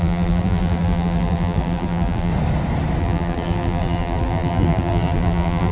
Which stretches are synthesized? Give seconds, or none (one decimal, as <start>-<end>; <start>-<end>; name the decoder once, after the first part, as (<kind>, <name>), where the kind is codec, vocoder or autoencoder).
0.0-2.3 (vocoder, BigVGAN v2); 3.0-5.7